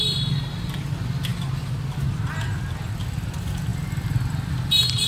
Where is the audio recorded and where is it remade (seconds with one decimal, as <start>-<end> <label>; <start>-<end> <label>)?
0.0-5.1 recorded

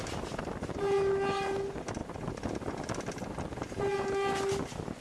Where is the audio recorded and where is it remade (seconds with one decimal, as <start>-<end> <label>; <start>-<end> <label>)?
0.0-5.0 recorded

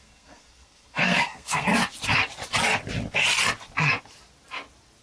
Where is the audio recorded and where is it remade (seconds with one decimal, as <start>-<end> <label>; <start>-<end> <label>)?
0.0-1.7 remade; 1.7-5.0 recorded

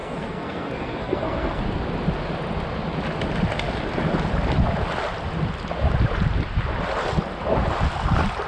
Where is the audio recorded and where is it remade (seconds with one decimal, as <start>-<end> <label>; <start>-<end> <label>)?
0.0-1.6 remade; 1.6-8.5 recorded

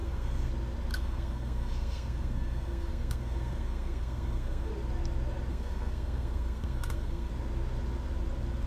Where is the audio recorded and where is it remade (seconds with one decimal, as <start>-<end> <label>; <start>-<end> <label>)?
0.0-0.5 remade; 0.5-0.9 recorded; 0.9-4.7 remade; 4.7-5.5 recorded; 5.5-7.3 remade; 7.3-8.7 recorded